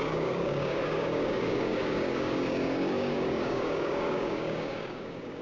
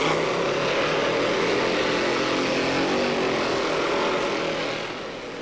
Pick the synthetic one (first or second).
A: first